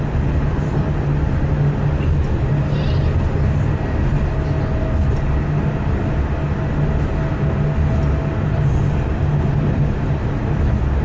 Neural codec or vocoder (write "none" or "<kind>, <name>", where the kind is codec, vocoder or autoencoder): none